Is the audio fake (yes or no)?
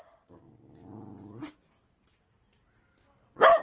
no